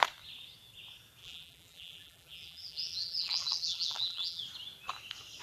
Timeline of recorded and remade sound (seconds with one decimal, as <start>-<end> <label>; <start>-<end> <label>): 0.0-1.2 recorded; 1.2-4.4 remade; 4.4-5.4 recorded